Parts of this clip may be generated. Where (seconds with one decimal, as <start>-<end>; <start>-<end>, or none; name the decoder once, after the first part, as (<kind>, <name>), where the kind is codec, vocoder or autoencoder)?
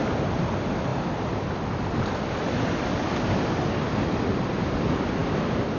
none